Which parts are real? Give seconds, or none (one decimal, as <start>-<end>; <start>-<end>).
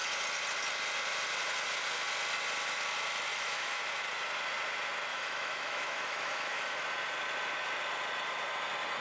0.0-3.3; 3.8-5.1; 6.8-9.0